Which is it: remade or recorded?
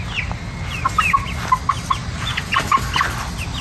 recorded